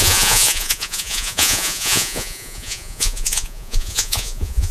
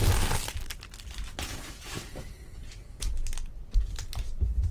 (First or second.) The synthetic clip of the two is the first